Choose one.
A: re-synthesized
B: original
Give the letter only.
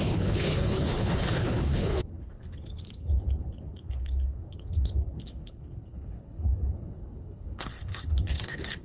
A